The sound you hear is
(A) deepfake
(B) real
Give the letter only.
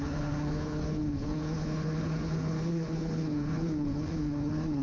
A